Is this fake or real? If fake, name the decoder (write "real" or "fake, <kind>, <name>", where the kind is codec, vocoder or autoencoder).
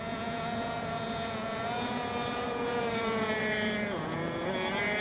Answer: fake, vocoder, Vocos